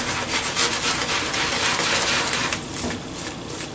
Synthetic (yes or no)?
no